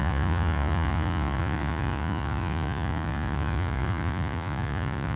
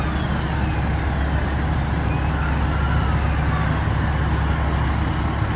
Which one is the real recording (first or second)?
second